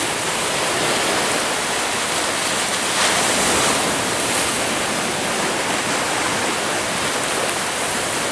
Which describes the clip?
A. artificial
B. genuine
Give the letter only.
B